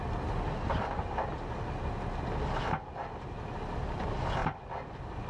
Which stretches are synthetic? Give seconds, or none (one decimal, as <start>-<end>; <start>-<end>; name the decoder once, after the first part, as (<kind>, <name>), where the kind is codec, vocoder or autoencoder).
4.4-5.3 (vocoder, BigVGAN v2)